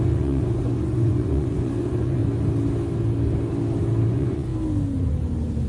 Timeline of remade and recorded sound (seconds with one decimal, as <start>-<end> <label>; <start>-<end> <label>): 0.0-2.2 remade; 2.2-4.1 recorded; 4.1-4.5 remade; 4.5-5.7 recorded